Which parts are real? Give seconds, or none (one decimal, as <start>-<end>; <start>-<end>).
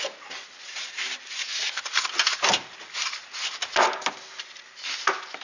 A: 0.0-5.4